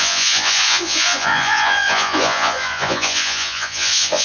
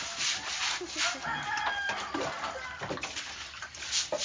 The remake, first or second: first